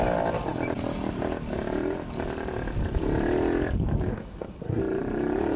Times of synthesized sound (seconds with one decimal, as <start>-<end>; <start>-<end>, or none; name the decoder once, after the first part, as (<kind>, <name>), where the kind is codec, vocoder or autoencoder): 4.1-4.8 (codec, SNAC)